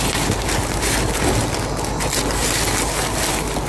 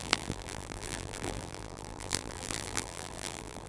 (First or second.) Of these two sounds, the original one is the first